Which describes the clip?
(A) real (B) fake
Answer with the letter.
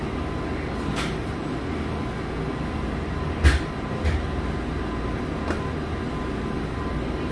A